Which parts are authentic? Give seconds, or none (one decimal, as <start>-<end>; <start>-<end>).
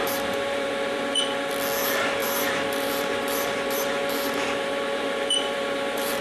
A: 1.5-2.2